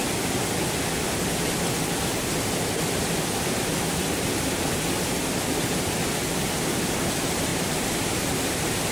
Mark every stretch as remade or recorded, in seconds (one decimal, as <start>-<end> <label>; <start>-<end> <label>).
0.0-7.5 recorded; 7.5-8.9 remade